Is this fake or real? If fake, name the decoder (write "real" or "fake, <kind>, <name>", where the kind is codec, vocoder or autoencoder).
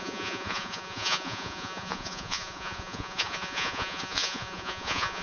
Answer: fake, vocoder, Vocos